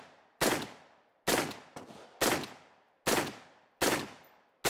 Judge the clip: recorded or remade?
recorded